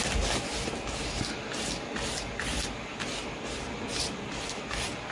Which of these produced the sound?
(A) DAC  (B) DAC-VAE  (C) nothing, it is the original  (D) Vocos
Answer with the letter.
C